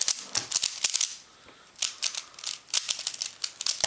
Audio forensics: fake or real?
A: real